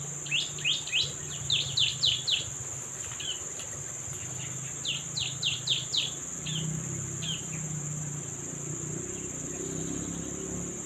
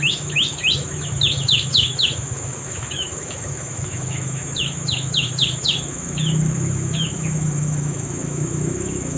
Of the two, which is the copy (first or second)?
second